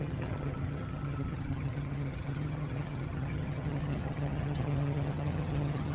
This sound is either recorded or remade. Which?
remade